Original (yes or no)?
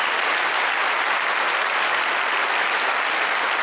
yes